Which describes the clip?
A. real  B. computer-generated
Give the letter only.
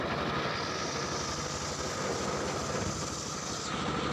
A